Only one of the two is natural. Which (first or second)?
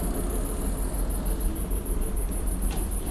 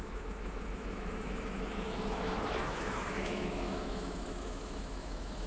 first